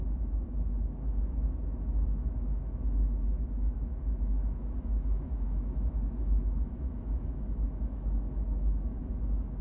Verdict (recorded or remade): remade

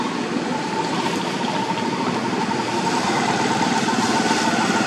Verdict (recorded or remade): recorded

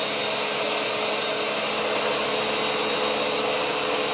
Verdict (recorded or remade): recorded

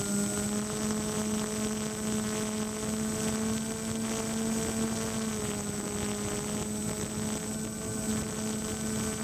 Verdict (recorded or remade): recorded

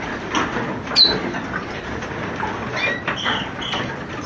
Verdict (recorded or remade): recorded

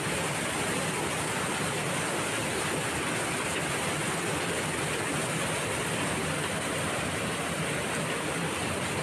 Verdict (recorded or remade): recorded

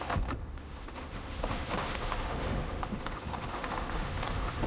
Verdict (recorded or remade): remade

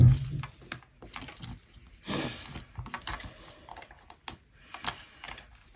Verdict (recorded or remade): recorded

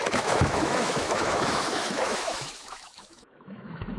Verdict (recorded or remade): remade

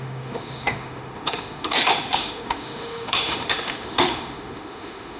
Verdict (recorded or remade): remade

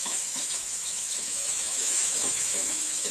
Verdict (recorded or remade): remade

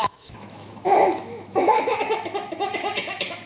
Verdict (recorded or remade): remade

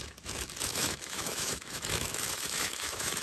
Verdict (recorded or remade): remade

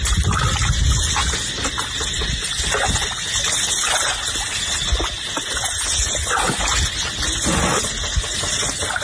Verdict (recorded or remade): recorded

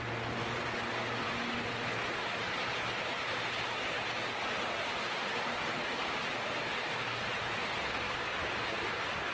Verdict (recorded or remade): recorded